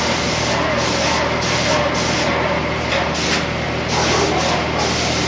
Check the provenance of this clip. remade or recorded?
recorded